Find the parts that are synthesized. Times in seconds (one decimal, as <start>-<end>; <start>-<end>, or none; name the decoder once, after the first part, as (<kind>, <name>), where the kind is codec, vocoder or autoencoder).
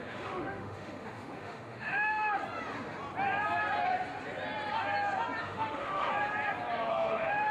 0.0-2.4 (autoencoder, DAC-VAE); 5.4-6.1; 6.9-7.5